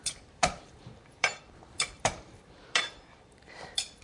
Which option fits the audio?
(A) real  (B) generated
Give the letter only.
B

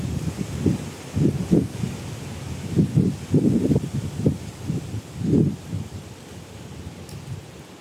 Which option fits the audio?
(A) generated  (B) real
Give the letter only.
B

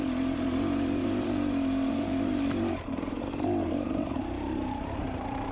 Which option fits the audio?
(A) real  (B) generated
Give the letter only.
B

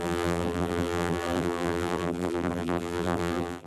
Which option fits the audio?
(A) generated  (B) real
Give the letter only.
A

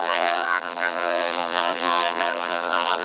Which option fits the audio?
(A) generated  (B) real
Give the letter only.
A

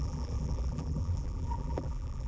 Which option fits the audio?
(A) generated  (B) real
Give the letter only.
A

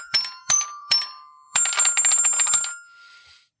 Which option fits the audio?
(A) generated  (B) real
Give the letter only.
A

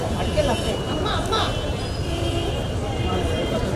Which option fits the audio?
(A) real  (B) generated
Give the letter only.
B